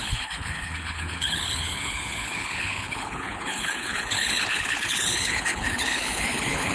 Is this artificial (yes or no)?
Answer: yes